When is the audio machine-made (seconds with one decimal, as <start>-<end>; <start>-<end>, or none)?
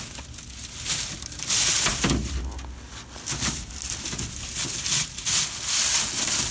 none